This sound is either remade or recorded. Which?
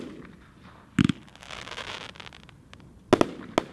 recorded